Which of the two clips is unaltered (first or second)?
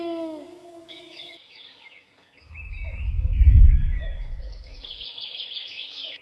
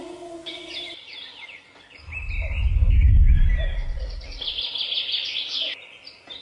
second